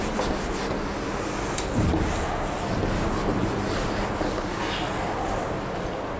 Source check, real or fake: real